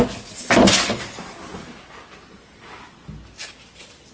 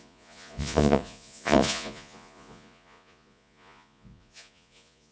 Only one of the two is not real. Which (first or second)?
second